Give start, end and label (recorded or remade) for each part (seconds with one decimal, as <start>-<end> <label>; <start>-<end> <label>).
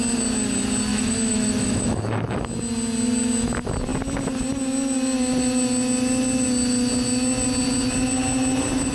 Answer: 0.0-0.9 recorded; 0.9-2.4 remade; 2.4-8.9 recorded